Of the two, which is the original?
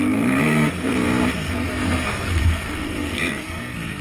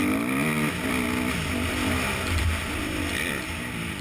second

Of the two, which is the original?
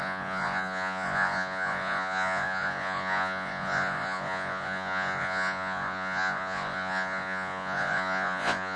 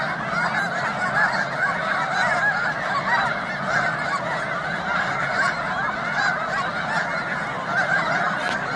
second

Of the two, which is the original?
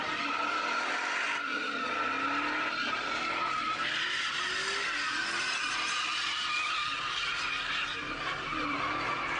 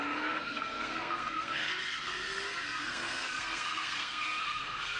first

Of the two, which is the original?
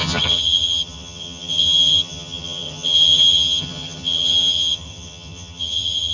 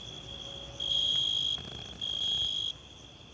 second